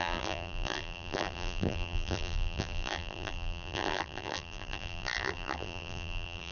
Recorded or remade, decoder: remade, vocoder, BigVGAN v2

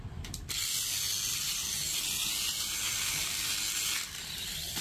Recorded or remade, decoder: recorded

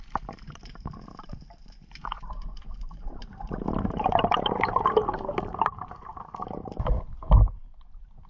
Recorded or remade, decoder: remade, vocoder, BigVGAN v2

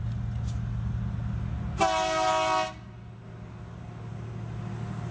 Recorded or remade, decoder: recorded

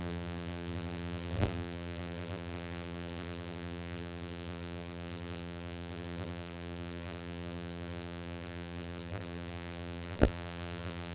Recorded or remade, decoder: remade, vocoder, BigVGAN v2